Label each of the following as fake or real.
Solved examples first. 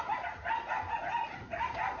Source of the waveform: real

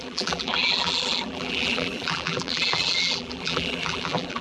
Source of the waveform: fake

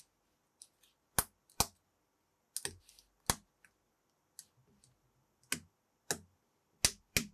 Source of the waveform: real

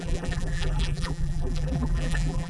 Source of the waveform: fake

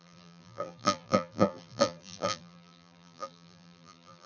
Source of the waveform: fake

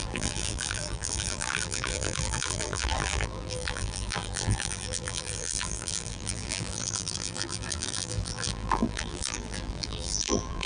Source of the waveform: fake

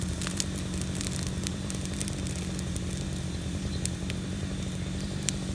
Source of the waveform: real